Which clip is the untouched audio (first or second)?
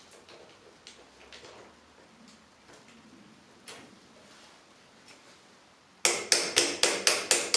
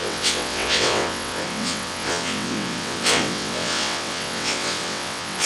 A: first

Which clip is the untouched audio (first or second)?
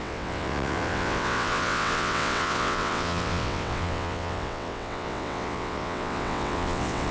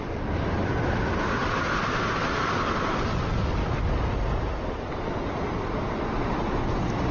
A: second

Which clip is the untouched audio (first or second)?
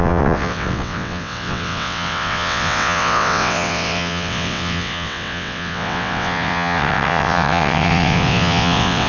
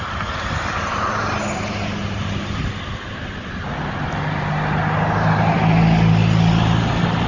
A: second